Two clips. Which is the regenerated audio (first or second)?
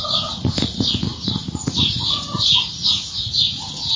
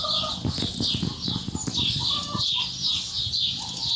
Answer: first